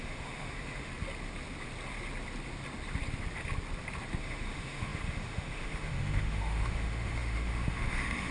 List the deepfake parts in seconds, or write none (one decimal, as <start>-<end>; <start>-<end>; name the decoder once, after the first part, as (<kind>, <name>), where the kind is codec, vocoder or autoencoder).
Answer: 0.0-0.9 (autoencoder, DAC-VAE); 4.2-8.3